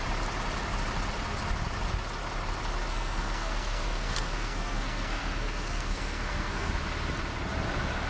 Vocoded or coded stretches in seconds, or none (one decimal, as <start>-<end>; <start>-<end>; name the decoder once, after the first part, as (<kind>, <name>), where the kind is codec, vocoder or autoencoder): 2.9-6.7 (codec, SNAC)